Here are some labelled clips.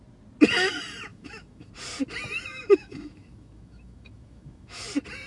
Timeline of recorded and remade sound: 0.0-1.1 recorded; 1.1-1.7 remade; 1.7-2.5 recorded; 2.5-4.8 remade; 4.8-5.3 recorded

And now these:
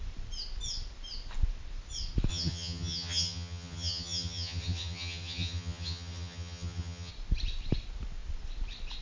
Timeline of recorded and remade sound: 0.0-2.3 recorded; 2.3-7.1 remade; 7.1-9.0 recorded

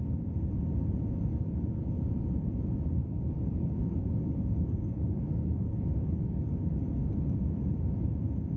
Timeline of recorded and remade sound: 0.0-1.3 recorded; 1.3-2.3 remade; 2.3-3.0 recorded; 3.0-7.1 remade; 7.1-8.6 recorded

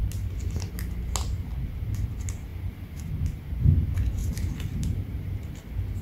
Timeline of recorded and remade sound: 0.0-2.5 recorded; 2.5-3.1 remade; 3.1-4.2 recorded; 4.2-5.5 remade; 5.5-6.0 recorded

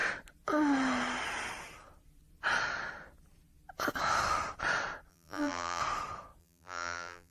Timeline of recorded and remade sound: 0.0-5.1 recorded; 5.1-5.8 remade; 5.8-6.4 recorded; 6.4-7.3 remade